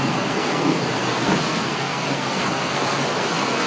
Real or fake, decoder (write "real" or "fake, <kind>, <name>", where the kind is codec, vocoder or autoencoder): fake, codec, SNAC